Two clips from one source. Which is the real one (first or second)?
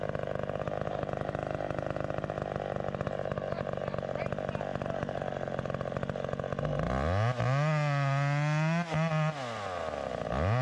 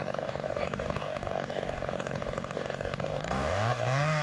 first